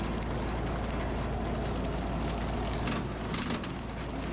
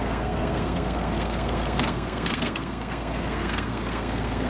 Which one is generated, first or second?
second